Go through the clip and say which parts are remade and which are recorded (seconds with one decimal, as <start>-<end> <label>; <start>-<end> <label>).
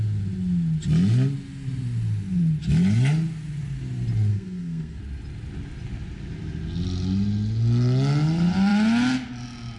0.0-4.3 recorded; 4.3-5.0 remade; 5.0-9.8 recorded